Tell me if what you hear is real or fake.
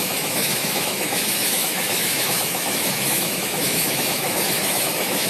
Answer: fake